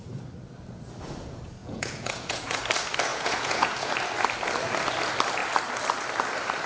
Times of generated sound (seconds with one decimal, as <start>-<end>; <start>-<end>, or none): 1.6-2.6; 3.1-3.9